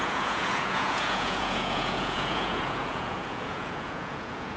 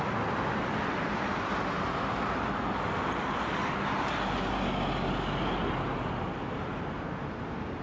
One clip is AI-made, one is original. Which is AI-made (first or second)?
first